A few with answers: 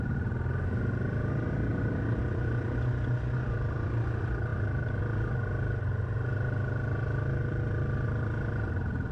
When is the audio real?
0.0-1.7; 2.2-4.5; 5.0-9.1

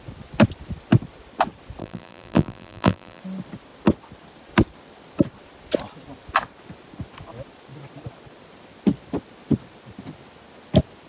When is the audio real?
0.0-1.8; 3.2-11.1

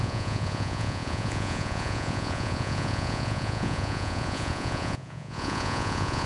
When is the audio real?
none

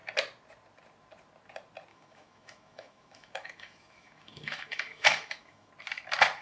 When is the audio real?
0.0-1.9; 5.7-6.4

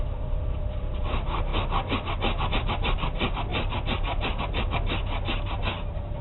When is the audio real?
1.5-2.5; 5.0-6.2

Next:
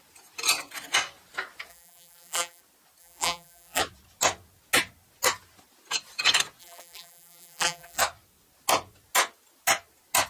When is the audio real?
0.0-1.7; 2.6-3.0; 3.8-6.6; 8.0-10.3

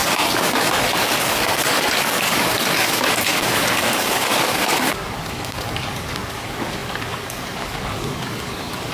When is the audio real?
none